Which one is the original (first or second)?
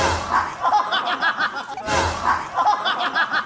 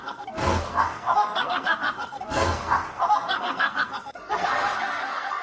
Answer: first